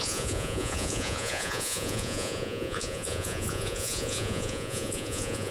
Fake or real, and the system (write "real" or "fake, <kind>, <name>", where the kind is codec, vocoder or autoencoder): fake, vocoder, Vocos